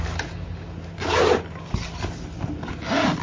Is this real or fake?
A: real